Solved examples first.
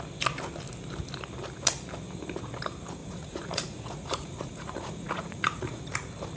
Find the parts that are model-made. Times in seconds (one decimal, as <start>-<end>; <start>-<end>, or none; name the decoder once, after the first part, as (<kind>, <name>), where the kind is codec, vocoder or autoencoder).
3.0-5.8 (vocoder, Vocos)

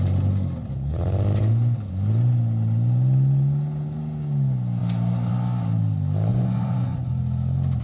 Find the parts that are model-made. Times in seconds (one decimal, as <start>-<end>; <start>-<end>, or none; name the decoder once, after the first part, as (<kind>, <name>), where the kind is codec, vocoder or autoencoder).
6.3-7.1 (vocoder, Vocos)

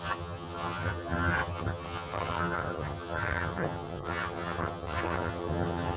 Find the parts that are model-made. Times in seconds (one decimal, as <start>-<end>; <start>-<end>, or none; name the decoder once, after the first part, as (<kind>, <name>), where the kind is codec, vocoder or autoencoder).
0.0-6.0 (vocoder, HiFi-GAN)

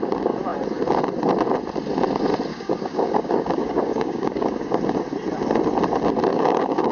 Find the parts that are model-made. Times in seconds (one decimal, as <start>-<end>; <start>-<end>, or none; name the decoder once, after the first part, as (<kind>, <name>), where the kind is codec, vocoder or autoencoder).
2.5-4.7 (codec, DAC); 6.3-6.9

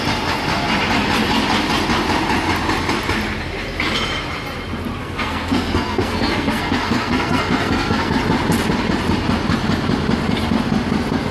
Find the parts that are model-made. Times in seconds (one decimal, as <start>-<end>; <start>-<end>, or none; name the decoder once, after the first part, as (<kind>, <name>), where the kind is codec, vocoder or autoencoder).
5.0-8.2 (codec, SNAC)

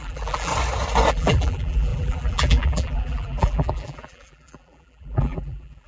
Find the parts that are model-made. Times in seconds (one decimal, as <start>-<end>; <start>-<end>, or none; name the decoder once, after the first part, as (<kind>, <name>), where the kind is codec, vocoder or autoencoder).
0.0-0.5 (vocoder, BigVGAN v2); 1.1-5.9